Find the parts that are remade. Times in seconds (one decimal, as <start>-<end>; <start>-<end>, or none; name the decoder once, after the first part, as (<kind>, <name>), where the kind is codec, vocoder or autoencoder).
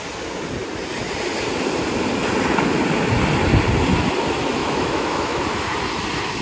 4.6-5.4 (autoencoder, DAC-VAE)